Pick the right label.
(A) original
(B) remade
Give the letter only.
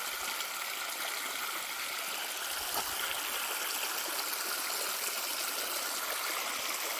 A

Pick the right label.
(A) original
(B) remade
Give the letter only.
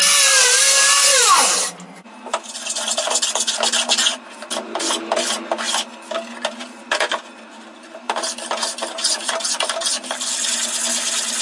A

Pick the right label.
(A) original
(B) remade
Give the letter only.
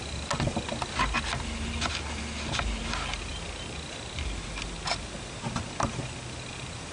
A